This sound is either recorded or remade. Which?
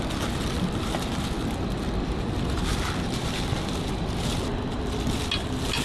recorded